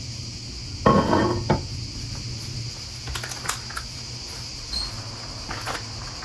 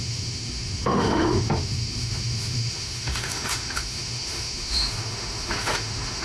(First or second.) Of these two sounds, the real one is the first